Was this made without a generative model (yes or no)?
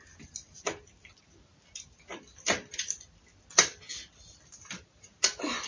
yes